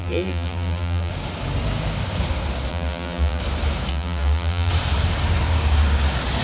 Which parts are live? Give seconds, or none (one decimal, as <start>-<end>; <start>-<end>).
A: 1.1-2.7; 3.4-3.9; 4.7-6.4